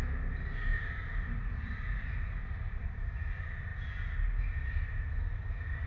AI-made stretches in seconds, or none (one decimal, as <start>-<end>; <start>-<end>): 0.7-3.1